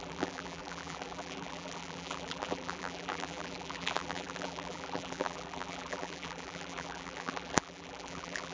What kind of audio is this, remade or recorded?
remade